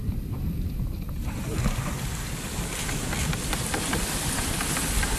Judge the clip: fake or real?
real